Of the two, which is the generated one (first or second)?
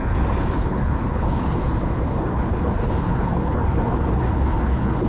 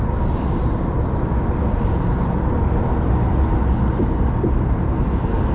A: first